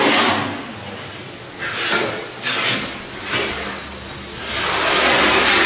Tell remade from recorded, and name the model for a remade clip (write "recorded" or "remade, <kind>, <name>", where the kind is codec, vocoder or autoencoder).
recorded